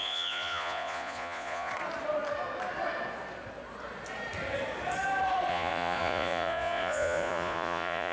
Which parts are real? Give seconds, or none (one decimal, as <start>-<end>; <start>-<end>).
1.7-5.5